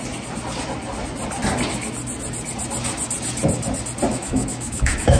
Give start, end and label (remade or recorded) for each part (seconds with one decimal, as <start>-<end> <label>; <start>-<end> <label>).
0.0-4.1 recorded; 4.1-5.2 remade